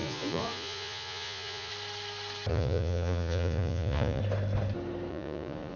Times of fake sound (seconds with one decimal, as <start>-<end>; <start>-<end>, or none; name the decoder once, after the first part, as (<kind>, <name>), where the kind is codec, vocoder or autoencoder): 0.0-1.7 (vocoder, Vocos); 2.5-4.2; 5.1-5.8